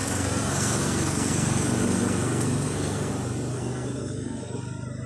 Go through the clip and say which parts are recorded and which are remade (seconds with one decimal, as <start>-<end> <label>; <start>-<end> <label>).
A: 0.0-3.1 remade; 3.1-3.5 recorded; 3.5-4.6 remade; 4.6-5.1 recorded